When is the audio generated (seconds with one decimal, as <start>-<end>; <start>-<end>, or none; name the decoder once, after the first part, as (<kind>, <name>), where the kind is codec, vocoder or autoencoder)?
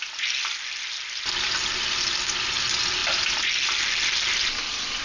none